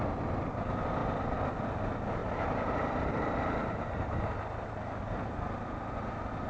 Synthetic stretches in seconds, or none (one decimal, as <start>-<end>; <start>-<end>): 2.2-6.1